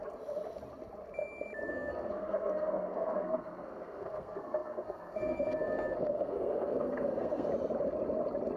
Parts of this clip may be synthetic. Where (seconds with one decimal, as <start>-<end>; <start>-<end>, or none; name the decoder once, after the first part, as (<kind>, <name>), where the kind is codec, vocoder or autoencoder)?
1.7-7.5 (codec, SNAC)